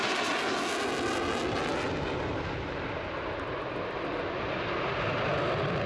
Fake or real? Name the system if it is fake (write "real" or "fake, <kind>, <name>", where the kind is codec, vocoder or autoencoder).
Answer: real